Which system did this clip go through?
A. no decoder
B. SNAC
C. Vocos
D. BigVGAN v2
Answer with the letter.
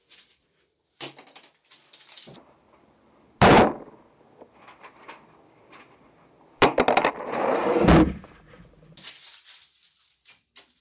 A